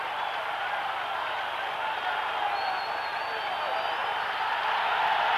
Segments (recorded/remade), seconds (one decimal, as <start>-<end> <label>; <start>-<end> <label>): 0.0-5.4 recorded